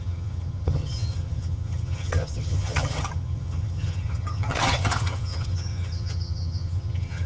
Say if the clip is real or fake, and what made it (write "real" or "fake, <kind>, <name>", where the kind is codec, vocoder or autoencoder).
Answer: fake, vocoder, HiFi-GAN